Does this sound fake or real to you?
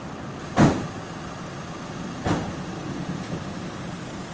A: real